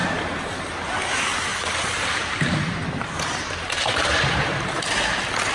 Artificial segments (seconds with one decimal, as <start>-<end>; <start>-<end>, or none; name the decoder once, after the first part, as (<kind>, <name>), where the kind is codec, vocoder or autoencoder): 0.0-0.6 (vocoder, BigVGAN v2); 1.5-4.8